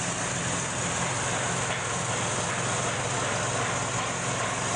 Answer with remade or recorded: recorded